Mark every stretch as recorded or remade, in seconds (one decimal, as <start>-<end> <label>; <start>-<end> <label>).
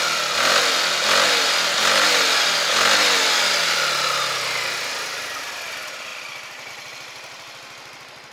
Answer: 0.0-8.3 recorded